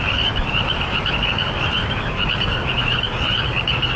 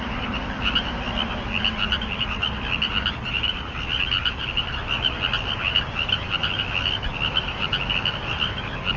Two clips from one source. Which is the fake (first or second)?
first